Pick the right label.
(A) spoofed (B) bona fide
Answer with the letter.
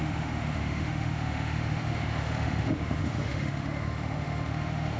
A